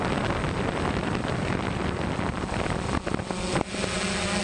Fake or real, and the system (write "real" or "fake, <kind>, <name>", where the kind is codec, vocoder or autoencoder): real